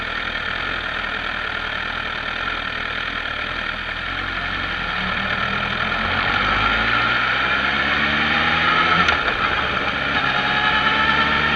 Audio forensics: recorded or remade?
recorded